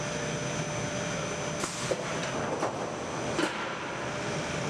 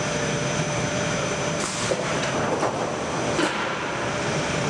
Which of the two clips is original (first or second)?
first